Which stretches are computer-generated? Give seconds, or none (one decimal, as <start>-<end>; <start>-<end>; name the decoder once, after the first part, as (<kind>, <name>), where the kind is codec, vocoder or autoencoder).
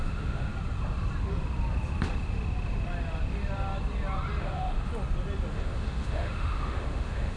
0.0-0.5 (autoencoder, DAC-VAE); 4.4-4.9; 5.5-7.4